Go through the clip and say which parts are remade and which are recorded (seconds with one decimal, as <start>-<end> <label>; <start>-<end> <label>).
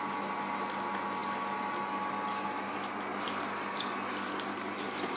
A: 0.0-5.2 recorded